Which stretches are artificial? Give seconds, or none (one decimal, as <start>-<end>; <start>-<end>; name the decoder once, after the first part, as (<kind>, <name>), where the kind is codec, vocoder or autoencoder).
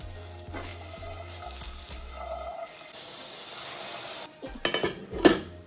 none